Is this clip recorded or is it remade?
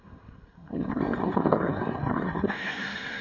remade